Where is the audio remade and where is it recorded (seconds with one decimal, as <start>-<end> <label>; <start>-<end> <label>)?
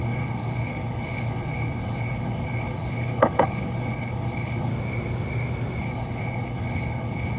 0.0-4.7 remade; 4.7-5.8 recorded; 5.8-7.4 remade